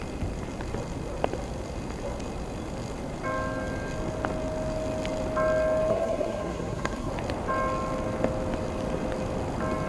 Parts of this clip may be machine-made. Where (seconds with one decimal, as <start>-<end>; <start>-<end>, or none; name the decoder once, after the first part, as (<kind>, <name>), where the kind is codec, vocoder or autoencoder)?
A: 5.9-7.1 (codec, SNAC)